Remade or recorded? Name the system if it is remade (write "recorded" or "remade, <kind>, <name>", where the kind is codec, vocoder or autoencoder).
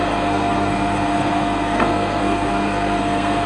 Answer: remade, codec, SNAC